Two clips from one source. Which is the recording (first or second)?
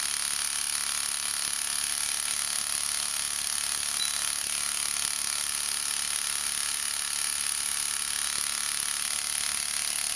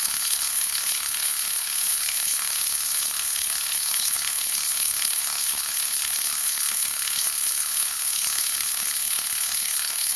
first